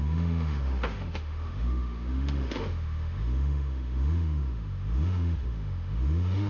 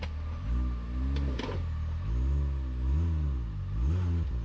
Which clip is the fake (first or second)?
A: first